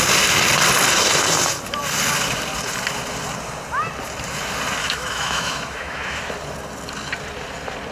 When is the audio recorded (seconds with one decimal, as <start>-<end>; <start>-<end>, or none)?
0.0-4.8; 6.2-7.9